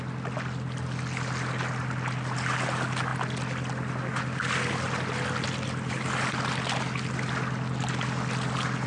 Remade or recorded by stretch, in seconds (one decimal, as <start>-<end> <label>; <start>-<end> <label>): 0.0-8.9 recorded

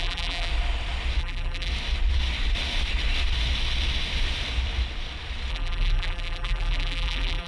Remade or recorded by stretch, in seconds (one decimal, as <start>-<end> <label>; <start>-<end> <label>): 0.0-0.5 remade; 0.5-1.2 recorded; 1.2-1.7 remade; 1.7-5.5 recorded; 5.5-7.5 remade

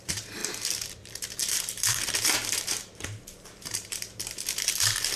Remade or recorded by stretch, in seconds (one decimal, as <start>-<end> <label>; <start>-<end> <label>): 0.0-0.4 remade; 0.4-0.9 recorded; 0.9-5.2 remade

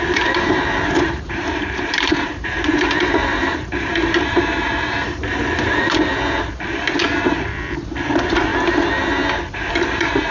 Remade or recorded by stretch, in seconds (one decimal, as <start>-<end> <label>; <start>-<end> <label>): 0.0-6.1 remade; 6.1-7.0 recorded; 7.0-8.5 remade; 8.5-9.5 recorded; 9.5-10.3 remade

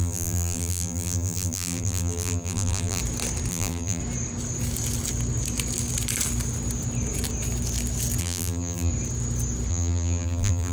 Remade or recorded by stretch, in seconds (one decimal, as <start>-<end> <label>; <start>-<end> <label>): 0.0-3.0 remade; 3.0-3.5 recorded; 3.5-4.0 remade; 4.0-8.2 recorded; 8.2-8.9 remade; 8.9-9.7 recorded; 9.7-10.7 remade

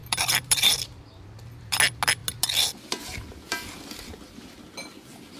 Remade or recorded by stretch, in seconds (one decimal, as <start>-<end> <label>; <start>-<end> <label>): 0.0-0.9 remade; 0.9-5.4 recorded

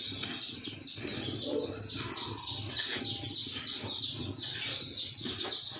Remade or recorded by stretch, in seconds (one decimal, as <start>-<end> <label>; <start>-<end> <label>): 0.0-5.8 recorded